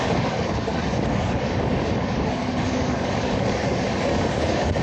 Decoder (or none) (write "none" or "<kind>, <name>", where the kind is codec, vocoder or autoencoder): codec, DAC